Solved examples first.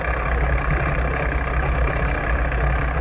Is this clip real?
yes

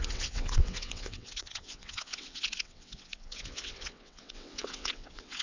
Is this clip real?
no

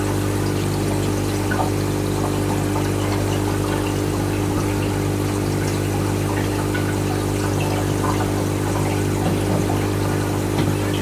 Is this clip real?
yes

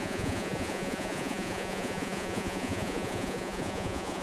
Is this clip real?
no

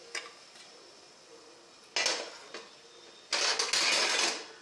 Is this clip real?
yes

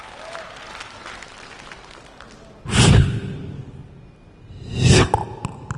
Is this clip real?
yes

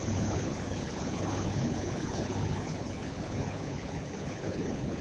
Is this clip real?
no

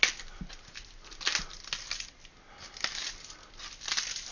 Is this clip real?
yes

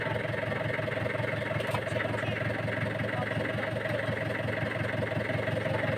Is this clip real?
yes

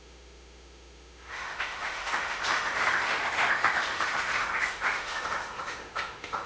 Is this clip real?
no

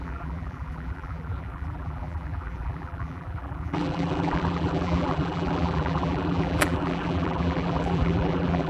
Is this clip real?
no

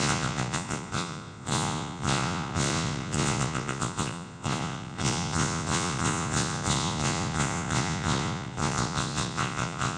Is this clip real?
no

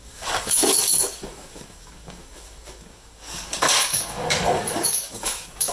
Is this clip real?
no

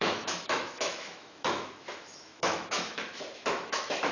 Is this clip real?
no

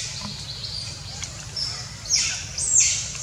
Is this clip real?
yes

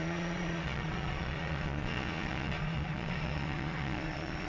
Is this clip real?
no